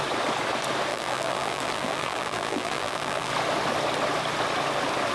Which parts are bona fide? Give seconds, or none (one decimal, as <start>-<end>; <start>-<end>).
0.0-0.9; 3.3-5.1

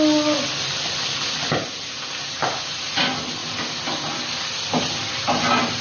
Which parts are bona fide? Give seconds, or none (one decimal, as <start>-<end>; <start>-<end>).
0.0-2.4; 3.0-5.8